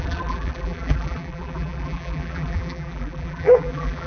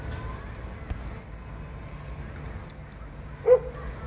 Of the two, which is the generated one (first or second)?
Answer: first